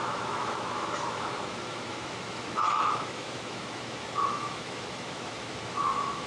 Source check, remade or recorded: remade